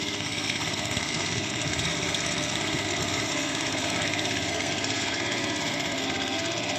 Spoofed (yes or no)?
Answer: yes